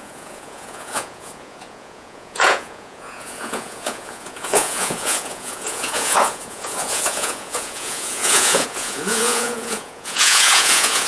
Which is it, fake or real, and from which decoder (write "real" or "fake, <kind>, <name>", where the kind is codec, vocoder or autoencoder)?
fake, vocoder, Vocos